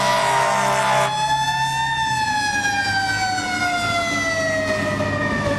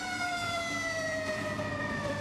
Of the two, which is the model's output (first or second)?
second